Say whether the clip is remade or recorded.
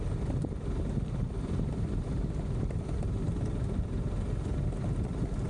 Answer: recorded